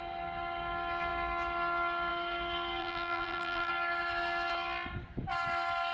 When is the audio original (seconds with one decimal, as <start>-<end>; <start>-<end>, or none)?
0.0-2.8; 3.7-5.9